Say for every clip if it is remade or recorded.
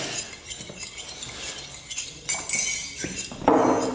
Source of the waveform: recorded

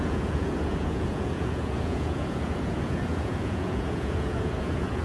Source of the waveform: remade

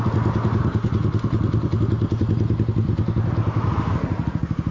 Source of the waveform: recorded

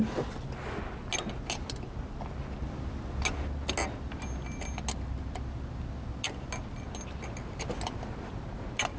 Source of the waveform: recorded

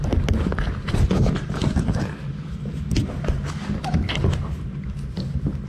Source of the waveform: recorded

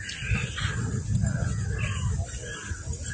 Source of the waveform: recorded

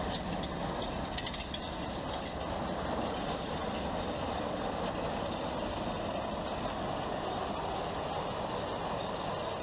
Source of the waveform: recorded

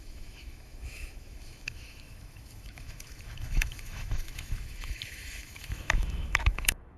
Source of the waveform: remade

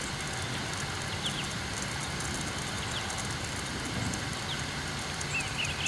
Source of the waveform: recorded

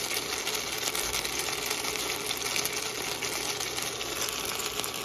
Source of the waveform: recorded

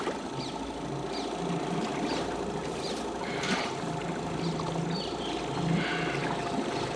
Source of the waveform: recorded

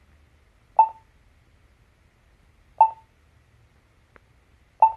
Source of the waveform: recorded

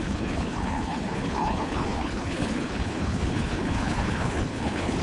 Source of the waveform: remade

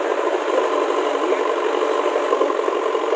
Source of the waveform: recorded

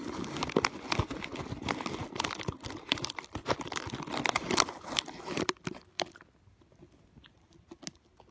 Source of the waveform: recorded